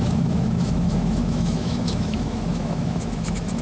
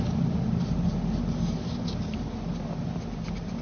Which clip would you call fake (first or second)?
first